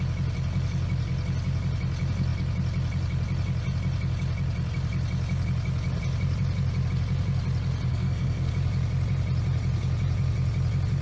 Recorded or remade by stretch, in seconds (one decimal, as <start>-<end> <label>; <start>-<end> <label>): 0.0-7.9 recorded; 7.9-8.5 remade; 8.5-11.0 recorded